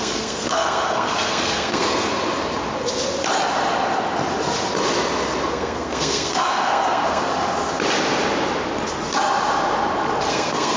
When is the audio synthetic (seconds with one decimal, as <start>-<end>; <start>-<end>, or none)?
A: 0.0-2.1; 5.5-7.3; 10.3-10.8